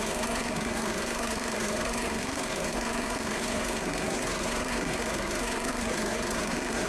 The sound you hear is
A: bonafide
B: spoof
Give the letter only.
B